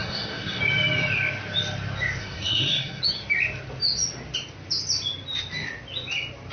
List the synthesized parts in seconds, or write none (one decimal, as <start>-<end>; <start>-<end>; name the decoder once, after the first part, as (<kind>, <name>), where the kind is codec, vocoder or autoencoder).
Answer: 0.0-0.6 (codec, SNAC); 2.2-3.0